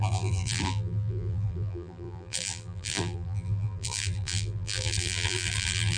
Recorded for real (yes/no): no